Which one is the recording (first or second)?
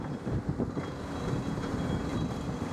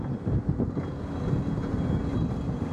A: second